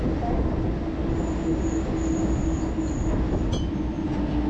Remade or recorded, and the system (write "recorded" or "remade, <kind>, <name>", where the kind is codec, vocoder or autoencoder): recorded